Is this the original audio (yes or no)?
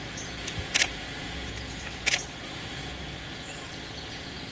no